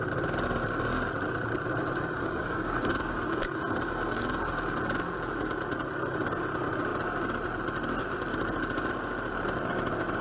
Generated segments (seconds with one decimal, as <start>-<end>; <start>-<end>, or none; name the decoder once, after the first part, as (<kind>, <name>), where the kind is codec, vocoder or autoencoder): 2.2-3.6 (codec, DAC)